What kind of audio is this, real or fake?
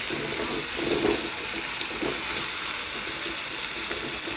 real